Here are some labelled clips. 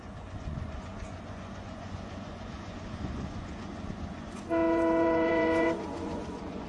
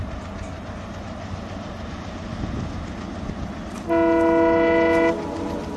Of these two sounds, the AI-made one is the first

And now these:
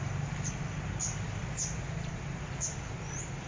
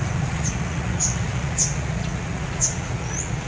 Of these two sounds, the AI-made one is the second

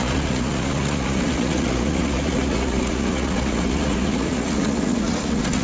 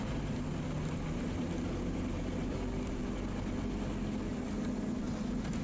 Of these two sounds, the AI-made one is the first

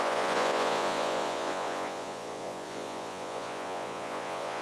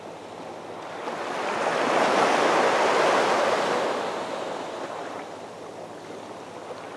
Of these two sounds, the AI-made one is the first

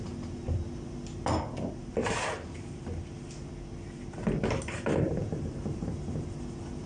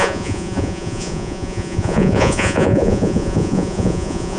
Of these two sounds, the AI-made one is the second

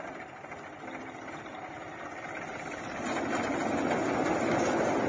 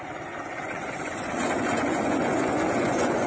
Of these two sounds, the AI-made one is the second